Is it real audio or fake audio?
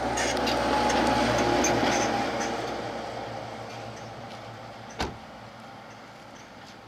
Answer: real